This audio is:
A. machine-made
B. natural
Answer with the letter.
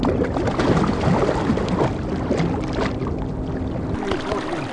B